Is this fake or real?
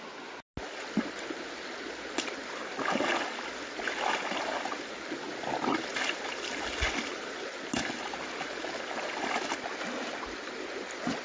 real